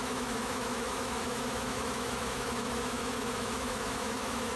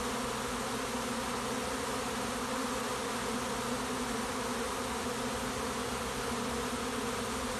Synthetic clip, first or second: first